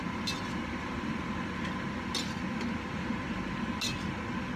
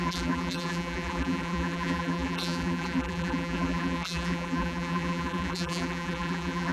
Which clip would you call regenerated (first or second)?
second